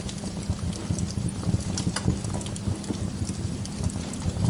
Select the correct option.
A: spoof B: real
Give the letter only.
A